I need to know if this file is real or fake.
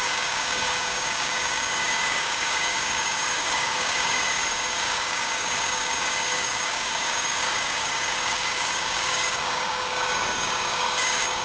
fake